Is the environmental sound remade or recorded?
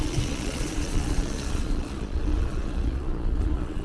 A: remade